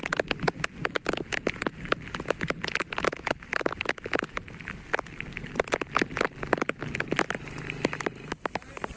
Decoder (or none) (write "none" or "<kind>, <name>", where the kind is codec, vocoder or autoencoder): none